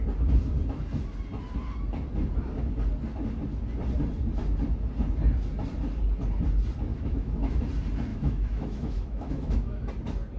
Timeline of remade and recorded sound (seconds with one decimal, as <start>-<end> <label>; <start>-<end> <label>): 0.0-6.9 recorded; 6.9-7.6 remade; 7.6-8.1 recorded; 8.1-9.9 remade; 9.9-10.4 recorded